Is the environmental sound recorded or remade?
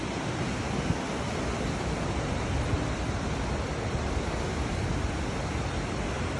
recorded